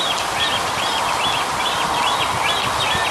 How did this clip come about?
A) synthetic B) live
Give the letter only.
B